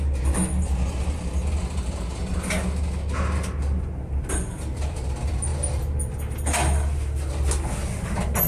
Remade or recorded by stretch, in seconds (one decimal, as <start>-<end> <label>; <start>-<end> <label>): 0.0-8.5 recorded